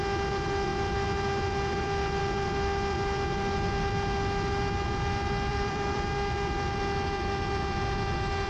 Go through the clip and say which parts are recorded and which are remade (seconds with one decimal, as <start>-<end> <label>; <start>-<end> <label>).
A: 0.0-5.5 recorded; 5.5-6.1 remade; 6.1-8.5 recorded